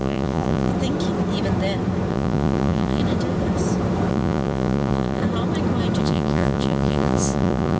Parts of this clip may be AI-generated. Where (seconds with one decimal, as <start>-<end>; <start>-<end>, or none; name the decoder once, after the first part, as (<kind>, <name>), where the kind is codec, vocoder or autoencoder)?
0.0-0.7 (vocoder, Vocos); 2.1-3.0; 4.1-5.2; 6.0-7.8